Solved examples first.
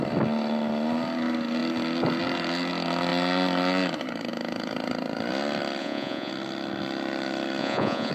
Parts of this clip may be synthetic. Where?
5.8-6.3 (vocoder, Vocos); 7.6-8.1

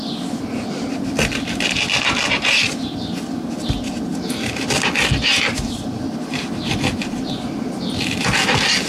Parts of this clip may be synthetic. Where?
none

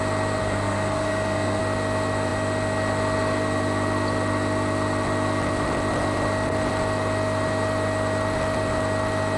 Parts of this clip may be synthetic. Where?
0.4-1.6 (codec, SNAC)

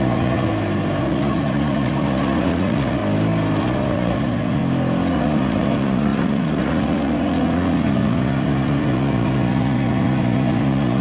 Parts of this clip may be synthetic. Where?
0.0-0.5 (vocoder, Vocos); 1.0-3.0; 3.6-4.6; 5.1-11.0

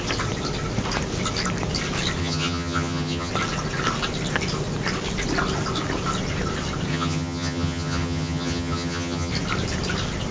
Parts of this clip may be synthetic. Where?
2.2-3.3 (vocoder, HiFi-GAN); 6.9-9.3

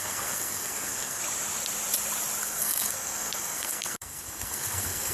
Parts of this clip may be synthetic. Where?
0.0-1.2 (codec, SNAC); 2.4-5.1

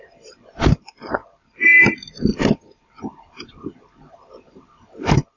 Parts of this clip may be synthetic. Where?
0.0-1.2 (vocoder, BigVGAN v2); 1.8-5.4

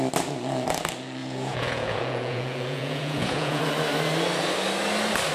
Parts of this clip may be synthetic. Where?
1.2-3.6 (vocoder, Vocos)